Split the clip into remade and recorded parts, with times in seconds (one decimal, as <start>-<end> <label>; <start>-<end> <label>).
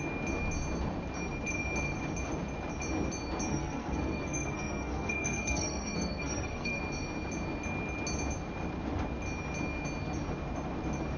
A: 0.0-3.5 recorded; 3.5-6.8 remade; 6.8-11.2 recorded